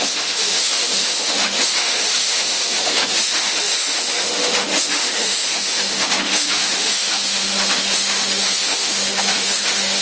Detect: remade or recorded remade